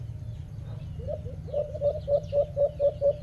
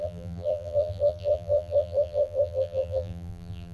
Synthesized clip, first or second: second